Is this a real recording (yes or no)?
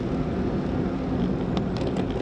yes